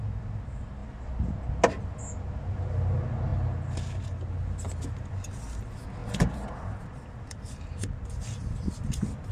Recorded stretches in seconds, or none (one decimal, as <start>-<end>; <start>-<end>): 0.0-0.8; 1.3-6.0; 7.4-9.3

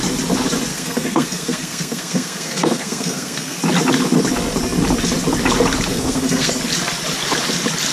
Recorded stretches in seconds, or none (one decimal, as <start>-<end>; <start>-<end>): 0.0-0.7; 3.6-5.9; 6.5-7.9

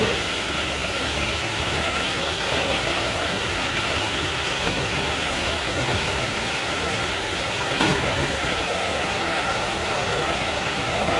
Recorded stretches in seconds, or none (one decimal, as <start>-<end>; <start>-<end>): none

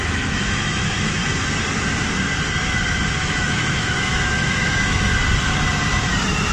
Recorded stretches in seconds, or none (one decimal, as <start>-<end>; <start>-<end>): 1.2-3.2; 5.1-6.5

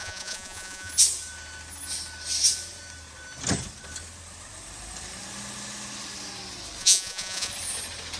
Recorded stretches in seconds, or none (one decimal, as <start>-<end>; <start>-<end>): 0.9-6.8; 7.5-8.2